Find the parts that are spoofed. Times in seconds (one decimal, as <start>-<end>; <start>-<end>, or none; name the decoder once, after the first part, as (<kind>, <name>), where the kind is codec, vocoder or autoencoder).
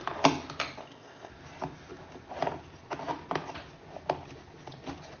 0.8-1.3 (codec, ZipCodec)